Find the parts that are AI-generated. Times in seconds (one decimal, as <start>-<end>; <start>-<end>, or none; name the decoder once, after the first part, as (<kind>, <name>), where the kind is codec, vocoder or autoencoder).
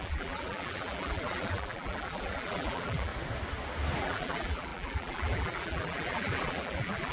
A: 0.0-3.1 (vocoder, BigVGAN v2); 4.0-7.1